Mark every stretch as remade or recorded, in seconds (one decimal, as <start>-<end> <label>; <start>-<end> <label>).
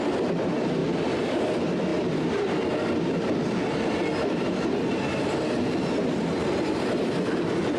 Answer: 0.0-0.8 recorded; 0.8-1.5 remade; 1.5-1.9 recorded; 1.9-2.5 remade; 2.5-7.8 recorded